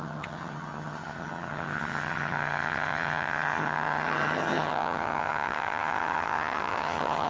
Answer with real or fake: fake